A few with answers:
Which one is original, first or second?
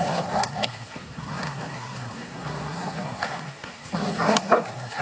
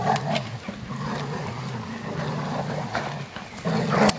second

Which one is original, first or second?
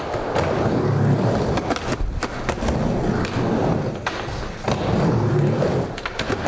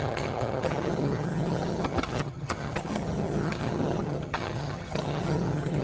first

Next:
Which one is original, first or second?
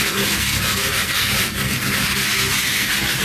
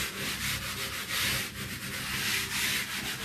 second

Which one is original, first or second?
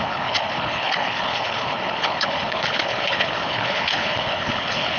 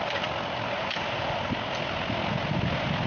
second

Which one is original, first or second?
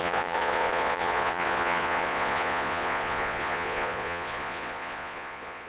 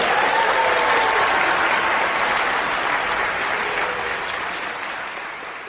second